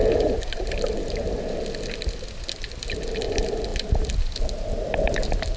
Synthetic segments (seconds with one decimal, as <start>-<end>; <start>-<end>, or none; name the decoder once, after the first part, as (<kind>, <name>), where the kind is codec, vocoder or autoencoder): 0.0-1.4 (vocoder, BigVGAN v2)